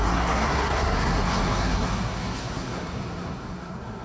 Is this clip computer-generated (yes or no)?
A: yes